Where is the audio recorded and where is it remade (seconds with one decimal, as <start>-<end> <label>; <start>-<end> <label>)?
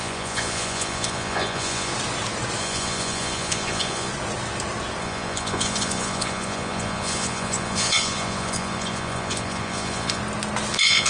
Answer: 0.0-1.9 remade; 1.9-2.6 recorded; 2.6-4.1 remade; 4.1-5.0 recorded; 5.0-10.2 remade; 10.2-10.7 recorded; 10.7-11.1 remade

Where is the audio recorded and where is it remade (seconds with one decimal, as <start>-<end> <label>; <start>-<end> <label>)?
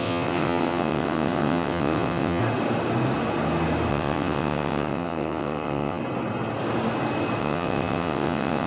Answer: 0.0-2.4 remade; 2.4-3.9 recorded; 3.9-6.0 remade; 6.0-7.4 recorded; 7.4-8.7 remade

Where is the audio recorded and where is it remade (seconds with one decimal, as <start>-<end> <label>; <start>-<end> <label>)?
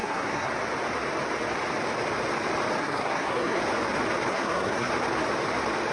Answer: 0.0-0.5 remade; 0.5-2.8 recorded; 2.8-3.6 remade; 3.6-4.3 recorded; 4.3-4.9 remade; 4.9-5.9 recorded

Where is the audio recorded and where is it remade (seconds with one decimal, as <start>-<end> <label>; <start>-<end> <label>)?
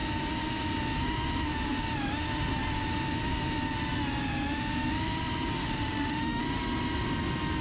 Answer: 0.0-5.6 recorded; 5.6-6.4 remade; 6.4-7.6 recorded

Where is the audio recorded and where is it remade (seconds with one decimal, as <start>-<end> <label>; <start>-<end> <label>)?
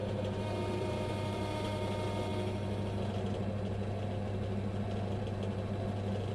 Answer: 0.0-1.8 remade; 1.8-6.3 recorded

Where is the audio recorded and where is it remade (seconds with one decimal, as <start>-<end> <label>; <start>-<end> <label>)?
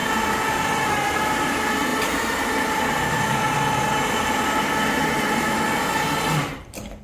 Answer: 0.0-7.0 recorded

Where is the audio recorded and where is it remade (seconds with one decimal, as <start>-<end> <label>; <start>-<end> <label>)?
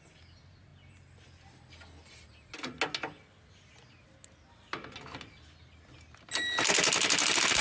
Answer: 0.0-7.6 recorded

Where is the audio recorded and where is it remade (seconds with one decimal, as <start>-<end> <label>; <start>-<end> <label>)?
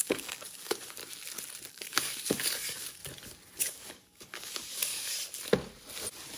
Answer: 0.0-1.0 remade; 1.0-1.7 recorded; 1.7-3.0 remade; 3.0-3.6 recorded; 3.6-5.1 remade; 5.1-6.4 recorded